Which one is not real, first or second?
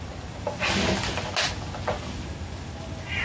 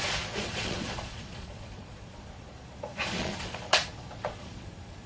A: second